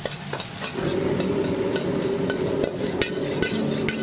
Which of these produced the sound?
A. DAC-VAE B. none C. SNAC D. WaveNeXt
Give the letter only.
B